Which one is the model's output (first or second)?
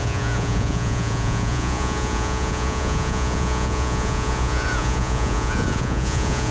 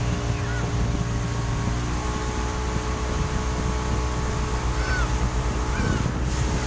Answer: first